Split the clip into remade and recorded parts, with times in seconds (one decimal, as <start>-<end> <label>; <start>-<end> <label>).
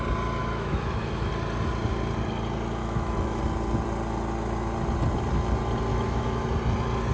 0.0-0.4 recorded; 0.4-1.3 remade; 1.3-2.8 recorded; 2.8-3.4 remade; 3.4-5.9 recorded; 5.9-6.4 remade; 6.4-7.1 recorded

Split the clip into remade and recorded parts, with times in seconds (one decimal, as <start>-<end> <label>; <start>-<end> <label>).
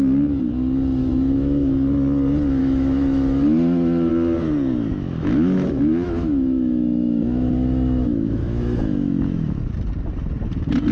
0.0-1.0 recorded; 1.0-1.7 remade; 1.7-2.6 recorded; 2.6-4.1 remade; 4.1-4.9 recorded; 4.9-9.6 remade; 9.6-10.9 recorded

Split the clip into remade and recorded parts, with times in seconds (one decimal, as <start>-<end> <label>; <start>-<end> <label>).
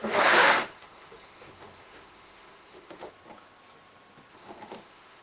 0.0-3.1 remade; 3.1-4.3 recorded; 4.3-5.2 remade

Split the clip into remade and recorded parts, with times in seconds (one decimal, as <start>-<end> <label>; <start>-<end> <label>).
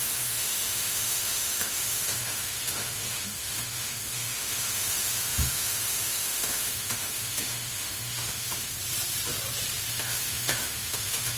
0.0-8.7 remade; 8.7-9.9 recorded; 9.9-11.4 remade